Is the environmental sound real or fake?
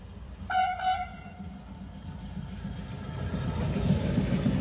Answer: real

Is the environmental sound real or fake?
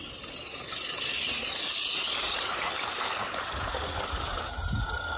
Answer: real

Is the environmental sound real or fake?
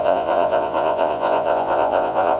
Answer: fake